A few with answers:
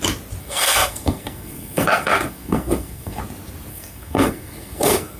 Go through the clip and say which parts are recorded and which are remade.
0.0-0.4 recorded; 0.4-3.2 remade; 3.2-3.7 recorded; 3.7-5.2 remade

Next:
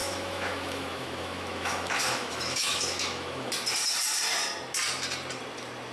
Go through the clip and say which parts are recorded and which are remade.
0.0-3.5 remade; 3.5-5.9 recorded

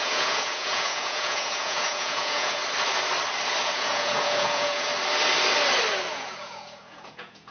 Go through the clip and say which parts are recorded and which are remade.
0.0-2.6 remade; 2.6-3.6 recorded; 3.6-4.9 remade; 4.9-6.1 recorded; 6.1-7.5 remade

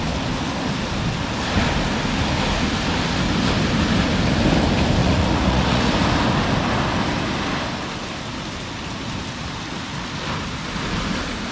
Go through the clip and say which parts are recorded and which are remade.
0.0-5.0 recorded; 5.0-5.9 remade; 5.9-11.5 recorded

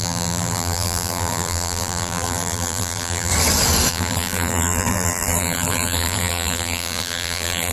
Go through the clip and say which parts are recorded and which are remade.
0.0-3.3 remade; 3.3-3.9 recorded; 3.9-7.7 remade